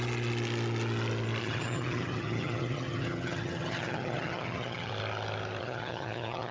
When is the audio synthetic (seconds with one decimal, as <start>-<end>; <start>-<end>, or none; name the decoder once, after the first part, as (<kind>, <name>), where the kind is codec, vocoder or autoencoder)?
1.4-4.9 (vocoder, HiFi-GAN); 5.6-6.5